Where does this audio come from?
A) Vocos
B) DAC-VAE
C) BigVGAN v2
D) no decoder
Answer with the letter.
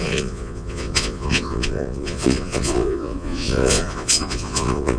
A